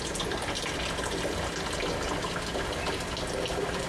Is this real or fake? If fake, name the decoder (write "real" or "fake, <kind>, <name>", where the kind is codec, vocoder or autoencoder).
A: real